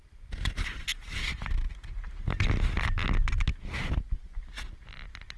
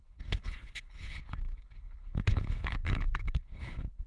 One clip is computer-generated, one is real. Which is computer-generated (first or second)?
second